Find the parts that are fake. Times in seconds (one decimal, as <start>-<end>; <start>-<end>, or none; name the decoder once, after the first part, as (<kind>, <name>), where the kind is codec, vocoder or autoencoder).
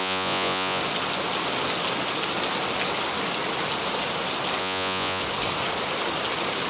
0.0-0.8 (vocoder, Vocos); 4.6-5.2